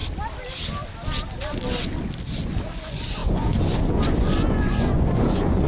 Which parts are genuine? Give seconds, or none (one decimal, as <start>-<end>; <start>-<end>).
0.0-2.7